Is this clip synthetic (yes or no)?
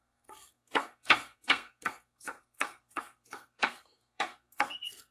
yes